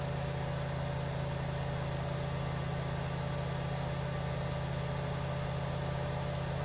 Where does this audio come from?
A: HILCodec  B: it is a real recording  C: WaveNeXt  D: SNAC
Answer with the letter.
B